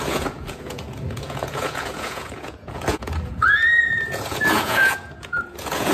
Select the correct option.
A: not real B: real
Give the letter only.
A